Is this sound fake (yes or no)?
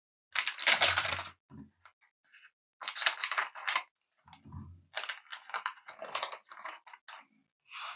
no